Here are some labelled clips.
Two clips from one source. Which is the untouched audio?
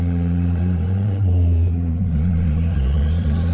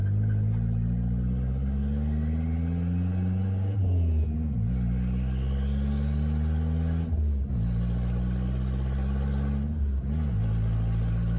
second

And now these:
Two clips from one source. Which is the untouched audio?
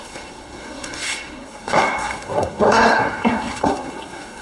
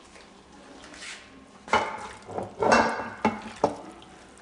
second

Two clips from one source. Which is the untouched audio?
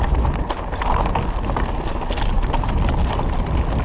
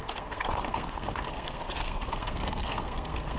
first